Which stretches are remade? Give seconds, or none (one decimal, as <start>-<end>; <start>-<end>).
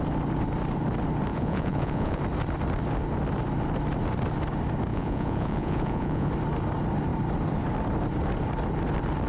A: 1.3-2.2; 4.9-6.3